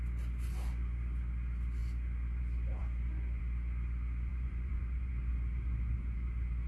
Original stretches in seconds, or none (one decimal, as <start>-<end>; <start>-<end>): 0.0-4.3; 5.1-6.7